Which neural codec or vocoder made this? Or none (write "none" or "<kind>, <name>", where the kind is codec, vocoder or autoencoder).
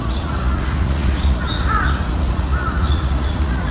vocoder, Vocos